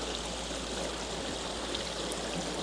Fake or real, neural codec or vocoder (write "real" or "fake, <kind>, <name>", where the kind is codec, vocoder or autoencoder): real